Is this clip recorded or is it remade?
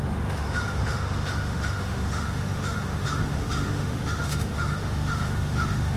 remade